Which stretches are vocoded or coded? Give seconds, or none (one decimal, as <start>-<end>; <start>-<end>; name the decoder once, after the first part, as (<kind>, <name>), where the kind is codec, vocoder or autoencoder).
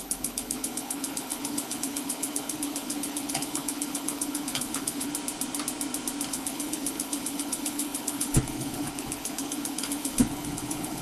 0.0-5.1 (codec, HILCodec); 6.3-11.0